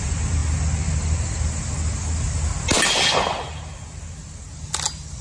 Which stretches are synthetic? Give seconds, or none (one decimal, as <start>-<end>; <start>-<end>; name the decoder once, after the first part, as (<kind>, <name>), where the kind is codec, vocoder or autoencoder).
none